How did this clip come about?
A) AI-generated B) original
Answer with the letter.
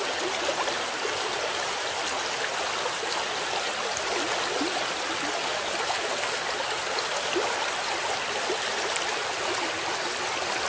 B